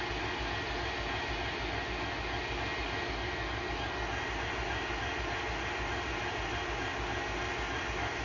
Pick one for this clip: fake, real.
real